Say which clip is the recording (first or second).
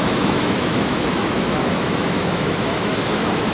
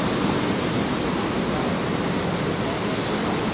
second